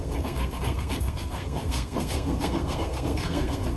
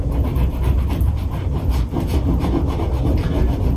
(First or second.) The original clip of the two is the second